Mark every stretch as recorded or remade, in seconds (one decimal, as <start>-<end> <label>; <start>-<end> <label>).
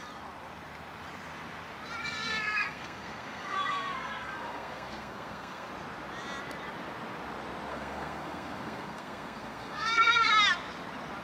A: 0.0-2.0 recorded; 2.0-5.7 remade; 5.7-7.7 recorded; 7.7-10.3 remade; 10.3-11.2 recorded